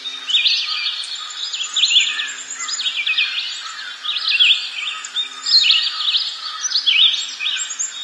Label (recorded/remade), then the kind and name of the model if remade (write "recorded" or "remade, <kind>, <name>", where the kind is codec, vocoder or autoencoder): recorded